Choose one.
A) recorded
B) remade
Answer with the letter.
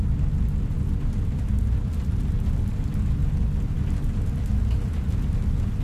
A